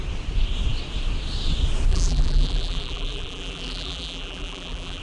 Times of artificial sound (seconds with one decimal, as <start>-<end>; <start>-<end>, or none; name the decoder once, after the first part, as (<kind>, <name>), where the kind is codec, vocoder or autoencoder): 1.9-5.0 (vocoder, BigVGAN v2)